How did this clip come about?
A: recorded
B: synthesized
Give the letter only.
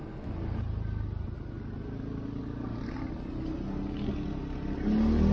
A